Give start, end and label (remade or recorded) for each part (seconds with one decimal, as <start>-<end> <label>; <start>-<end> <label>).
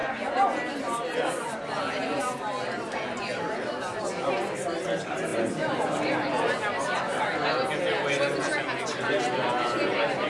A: 0.0-10.3 recorded